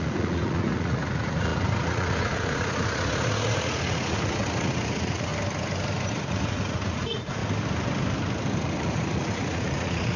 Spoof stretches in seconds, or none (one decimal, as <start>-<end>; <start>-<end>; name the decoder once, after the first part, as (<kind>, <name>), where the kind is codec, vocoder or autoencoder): 0.0-5.3 (vocoder, Vocos); 6.1-7.4; 8.6-10.2